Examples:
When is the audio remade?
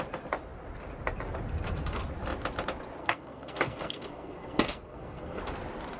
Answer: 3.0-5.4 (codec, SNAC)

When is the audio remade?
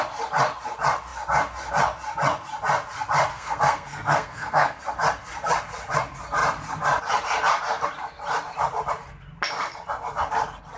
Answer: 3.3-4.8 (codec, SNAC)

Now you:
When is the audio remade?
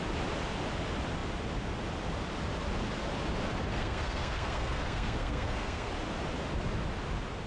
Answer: 3.7-5.9 (codec, SNAC)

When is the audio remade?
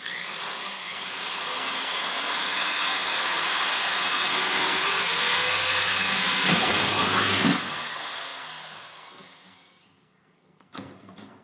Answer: 0.0-11.4 (codec, SNAC)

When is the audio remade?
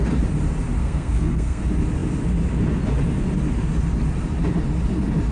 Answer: 0.8-1.6 (codec, SNAC)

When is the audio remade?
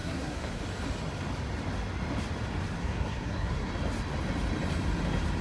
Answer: 0.0-0.6 (codec, SNAC); 2.8-3.7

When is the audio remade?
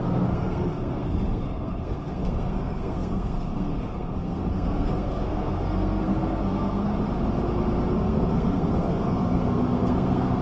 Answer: 0.0-6.9 (codec, SNAC); 7.9-10.4